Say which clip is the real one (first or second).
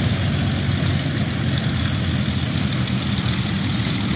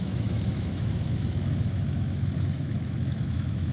first